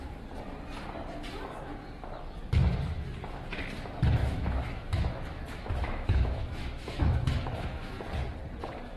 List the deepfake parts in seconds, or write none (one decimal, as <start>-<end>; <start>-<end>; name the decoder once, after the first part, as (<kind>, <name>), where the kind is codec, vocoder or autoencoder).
4.2-7.9 (autoencoder, DAC-VAE)